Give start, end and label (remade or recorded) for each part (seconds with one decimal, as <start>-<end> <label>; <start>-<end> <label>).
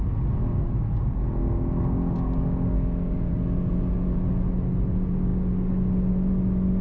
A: 0.0-1.4 recorded; 1.4-3.3 remade; 3.3-6.8 recorded